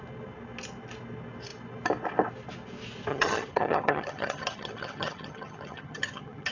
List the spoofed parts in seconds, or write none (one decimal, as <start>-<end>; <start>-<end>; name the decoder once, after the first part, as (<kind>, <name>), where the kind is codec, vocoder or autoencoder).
3.1-6.5 (vocoder, HiFi-GAN)

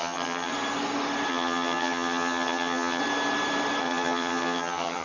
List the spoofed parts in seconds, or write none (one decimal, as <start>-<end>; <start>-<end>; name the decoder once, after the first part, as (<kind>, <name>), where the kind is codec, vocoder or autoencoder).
0.0-0.5 (vocoder, HiFi-GAN); 1.3-3.0; 3.8-5.0

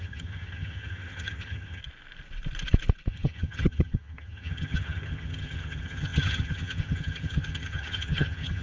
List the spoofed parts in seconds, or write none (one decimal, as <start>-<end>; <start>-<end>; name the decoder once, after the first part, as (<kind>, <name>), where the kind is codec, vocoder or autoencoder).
0.0-1.8 (vocoder, HiFi-GAN); 3.1-8.6

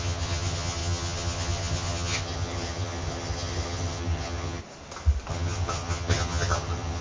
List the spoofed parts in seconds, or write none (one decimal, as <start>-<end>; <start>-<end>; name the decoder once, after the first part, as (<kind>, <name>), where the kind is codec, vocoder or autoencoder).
0.0-4.6 (vocoder, HiFi-GAN); 5.3-7.0

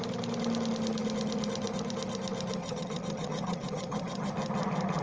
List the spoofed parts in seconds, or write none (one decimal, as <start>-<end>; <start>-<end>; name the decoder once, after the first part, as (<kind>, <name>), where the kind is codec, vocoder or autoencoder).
2.6-4.3 (vocoder, HiFi-GAN)

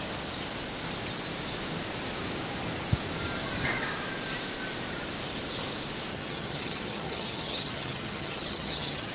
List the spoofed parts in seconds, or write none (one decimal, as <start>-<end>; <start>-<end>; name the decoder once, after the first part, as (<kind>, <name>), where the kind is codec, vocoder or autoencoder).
6.1-9.1 (vocoder, HiFi-GAN)

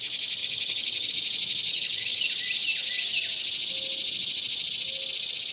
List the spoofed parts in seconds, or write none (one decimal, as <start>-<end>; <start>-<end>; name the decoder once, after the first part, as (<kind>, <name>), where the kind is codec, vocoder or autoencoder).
0.4-1.1 (vocoder, HiFi-GAN); 1.7-2.3

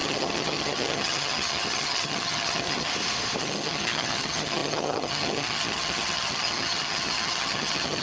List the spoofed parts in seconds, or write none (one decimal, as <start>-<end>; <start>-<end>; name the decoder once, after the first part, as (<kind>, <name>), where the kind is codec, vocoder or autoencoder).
0.0-2.9 (vocoder, HiFi-GAN); 3.4-8.0